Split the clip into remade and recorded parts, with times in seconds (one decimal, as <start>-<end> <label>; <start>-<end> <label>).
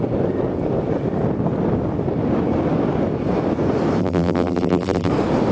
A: 0.0-4.0 recorded; 4.0-5.1 remade; 5.1-5.5 recorded